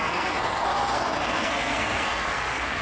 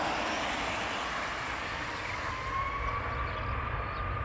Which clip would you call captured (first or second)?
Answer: second